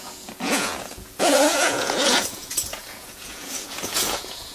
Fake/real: fake